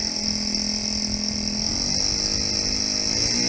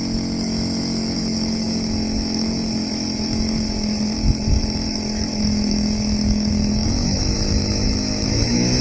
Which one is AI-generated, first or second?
second